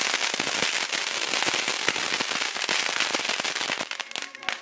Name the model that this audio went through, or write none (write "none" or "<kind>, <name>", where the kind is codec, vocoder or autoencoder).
none